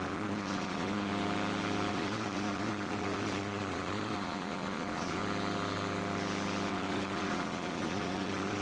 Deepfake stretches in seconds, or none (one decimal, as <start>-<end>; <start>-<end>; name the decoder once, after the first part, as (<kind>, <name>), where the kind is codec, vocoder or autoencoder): 0.0-1.1 (vocoder, Vocos); 1.9-5.2; 6.7-8.6